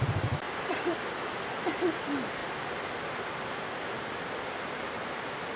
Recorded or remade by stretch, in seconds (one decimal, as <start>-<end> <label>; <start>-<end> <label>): 0.0-5.6 recorded